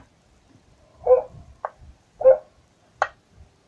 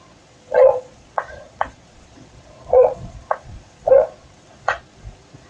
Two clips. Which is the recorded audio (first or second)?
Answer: first